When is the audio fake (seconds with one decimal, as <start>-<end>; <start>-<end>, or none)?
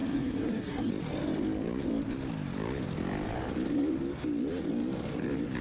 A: 0.0-0.9